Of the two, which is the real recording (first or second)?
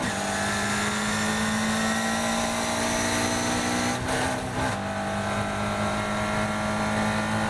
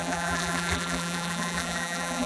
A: first